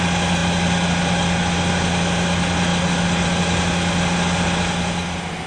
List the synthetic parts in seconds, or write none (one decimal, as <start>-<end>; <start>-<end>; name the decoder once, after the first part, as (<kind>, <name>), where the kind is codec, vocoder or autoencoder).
none